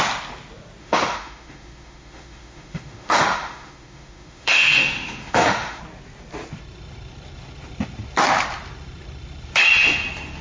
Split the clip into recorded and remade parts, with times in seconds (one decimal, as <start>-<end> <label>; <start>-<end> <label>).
0.0-0.8 recorded; 0.8-5.8 remade; 5.8-10.4 recorded